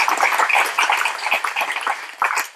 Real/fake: real